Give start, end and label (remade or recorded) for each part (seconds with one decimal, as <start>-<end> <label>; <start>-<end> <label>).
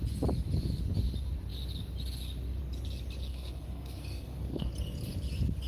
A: 0.0-3.3 recorded; 3.3-4.7 remade; 4.7-5.7 recorded